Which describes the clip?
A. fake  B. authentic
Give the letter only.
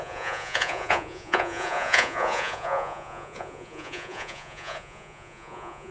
A